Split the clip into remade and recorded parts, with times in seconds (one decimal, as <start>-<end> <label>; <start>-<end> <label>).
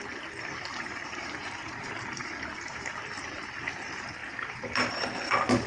0.0-0.7 recorded; 0.7-2.9 remade; 2.9-4.2 recorded; 4.2-4.9 remade; 4.9-5.7 recorded